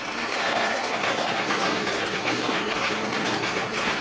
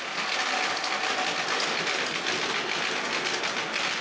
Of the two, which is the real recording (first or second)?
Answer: second